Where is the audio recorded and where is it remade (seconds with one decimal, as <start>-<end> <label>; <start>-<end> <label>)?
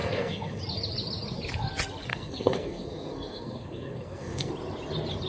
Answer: 0.0-0.6 remade; 0.6-2.1 recorded; 2.1-4.5 remade; 4.5-5.3 recorded